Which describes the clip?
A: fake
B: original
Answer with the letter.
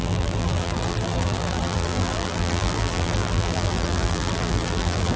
A